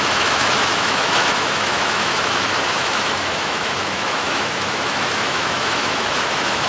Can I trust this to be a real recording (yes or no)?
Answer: no